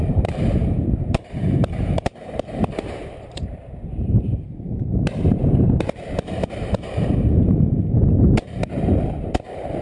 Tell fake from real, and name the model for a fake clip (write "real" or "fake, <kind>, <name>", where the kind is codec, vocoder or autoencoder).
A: fake, vocoder, BigVGAN v2